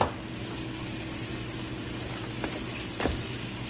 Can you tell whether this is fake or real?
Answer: real